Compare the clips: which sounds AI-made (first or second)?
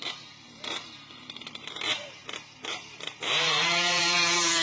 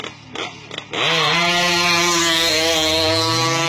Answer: first